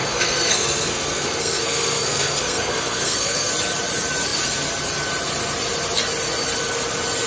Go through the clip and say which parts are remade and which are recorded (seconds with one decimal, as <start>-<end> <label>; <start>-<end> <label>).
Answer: 0.0-3.5 remade; 3.5-7.3 recorded